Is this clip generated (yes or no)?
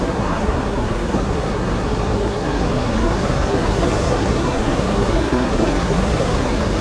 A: yes